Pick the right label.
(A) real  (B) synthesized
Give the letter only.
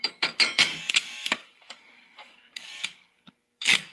B